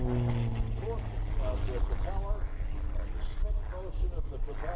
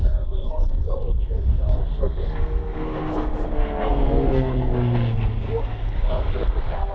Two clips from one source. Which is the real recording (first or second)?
first